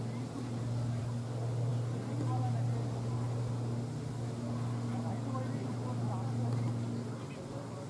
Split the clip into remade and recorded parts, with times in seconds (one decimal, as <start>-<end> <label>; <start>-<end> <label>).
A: 0.0-7.9 recorded